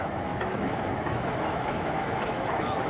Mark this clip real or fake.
fake